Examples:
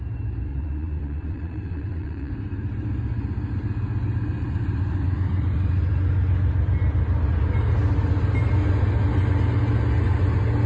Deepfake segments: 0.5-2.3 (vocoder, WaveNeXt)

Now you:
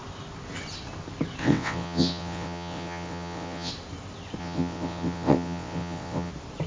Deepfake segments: 1.4-3.7 (vocoder, WaveNeXt); 4.4-6.3